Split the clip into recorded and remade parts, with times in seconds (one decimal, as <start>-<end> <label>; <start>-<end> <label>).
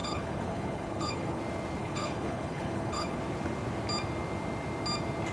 0.0-1.4 remade; 1.4-1.8 recorded; 1.8-3.2 remade; 3.2-5.3 recorded